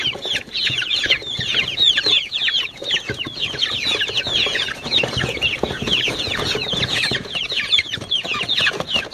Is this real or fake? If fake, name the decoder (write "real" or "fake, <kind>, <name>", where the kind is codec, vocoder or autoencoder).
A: fake, vocoder, Vocos